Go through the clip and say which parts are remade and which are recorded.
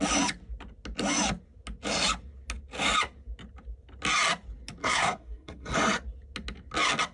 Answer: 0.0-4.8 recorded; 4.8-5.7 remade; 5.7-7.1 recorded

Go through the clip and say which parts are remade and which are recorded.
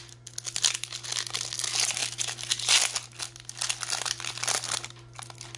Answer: 0.0-5.6 recorded